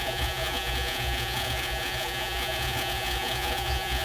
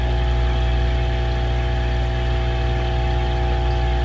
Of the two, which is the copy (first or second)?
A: first